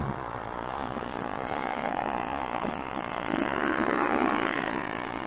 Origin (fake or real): fake